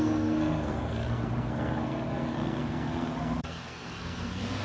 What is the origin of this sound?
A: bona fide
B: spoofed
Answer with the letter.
B